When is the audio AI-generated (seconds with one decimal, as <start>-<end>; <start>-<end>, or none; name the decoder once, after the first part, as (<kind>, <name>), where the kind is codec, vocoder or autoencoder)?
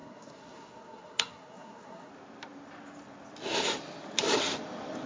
0.0-2.1 (codec, SNAC)